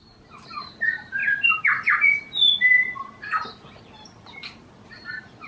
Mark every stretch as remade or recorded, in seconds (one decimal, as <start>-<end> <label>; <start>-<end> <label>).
0.0-5.5 recorded